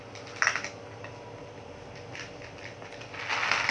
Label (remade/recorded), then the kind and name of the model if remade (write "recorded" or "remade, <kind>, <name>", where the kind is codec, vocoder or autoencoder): recorded